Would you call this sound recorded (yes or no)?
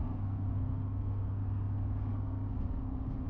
no